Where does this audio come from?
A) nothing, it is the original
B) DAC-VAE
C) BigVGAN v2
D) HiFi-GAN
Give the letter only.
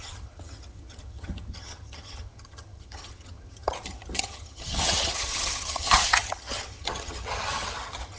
D